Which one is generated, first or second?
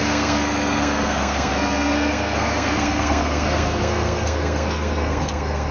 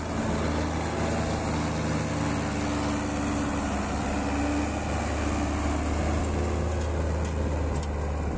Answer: first